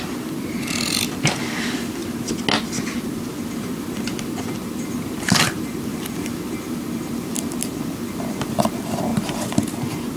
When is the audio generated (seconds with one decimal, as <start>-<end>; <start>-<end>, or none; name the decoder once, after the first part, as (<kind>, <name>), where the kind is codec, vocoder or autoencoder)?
0.0-2.0 (vocoder, BigVGAN v2); 3.5-9.1